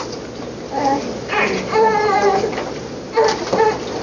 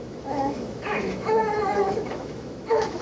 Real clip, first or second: first